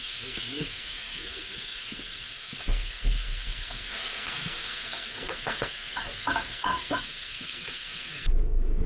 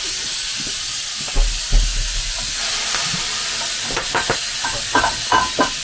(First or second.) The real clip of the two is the second